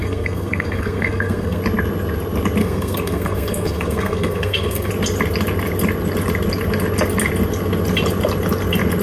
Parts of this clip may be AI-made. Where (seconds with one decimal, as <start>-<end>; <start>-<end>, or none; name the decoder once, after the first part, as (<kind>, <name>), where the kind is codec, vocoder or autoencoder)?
0.0-1.6 (codec, SNAC); 2.6-4.9